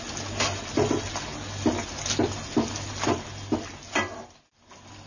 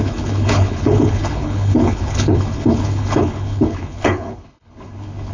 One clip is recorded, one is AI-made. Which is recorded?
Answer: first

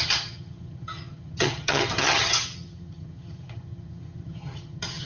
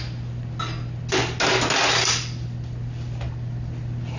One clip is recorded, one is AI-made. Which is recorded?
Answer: second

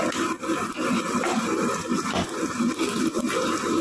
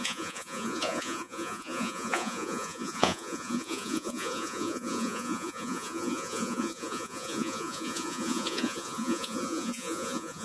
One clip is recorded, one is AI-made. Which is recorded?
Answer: first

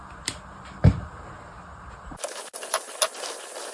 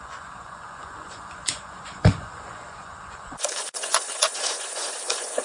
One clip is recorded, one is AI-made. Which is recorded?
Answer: first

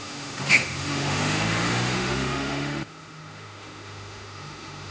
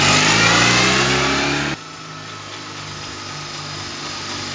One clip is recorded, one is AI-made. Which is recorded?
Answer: second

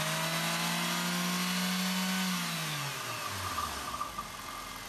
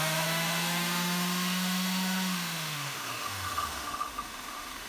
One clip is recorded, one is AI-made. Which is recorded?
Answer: first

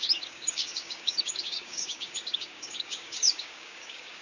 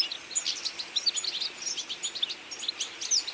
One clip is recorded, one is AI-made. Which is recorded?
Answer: second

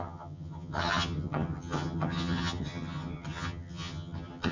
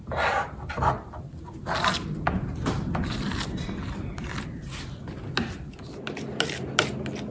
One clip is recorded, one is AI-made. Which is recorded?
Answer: second